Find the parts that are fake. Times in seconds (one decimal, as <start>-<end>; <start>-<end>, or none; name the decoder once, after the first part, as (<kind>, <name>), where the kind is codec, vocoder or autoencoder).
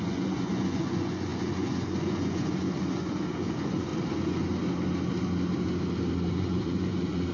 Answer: 0.0-3.9 (vocoder, Vocos); 6.3-7.3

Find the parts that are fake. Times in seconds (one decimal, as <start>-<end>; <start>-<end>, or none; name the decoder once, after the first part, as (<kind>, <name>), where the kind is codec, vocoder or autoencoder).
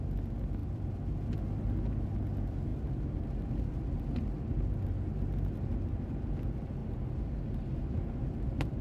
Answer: none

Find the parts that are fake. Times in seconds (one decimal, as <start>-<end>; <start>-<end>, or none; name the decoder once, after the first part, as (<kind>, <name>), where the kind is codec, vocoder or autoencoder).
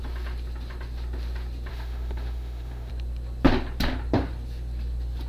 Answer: 1.7-2.9 (autoencoder, DAC-VAE)